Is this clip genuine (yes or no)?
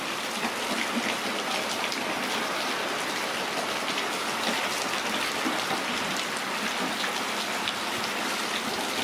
yes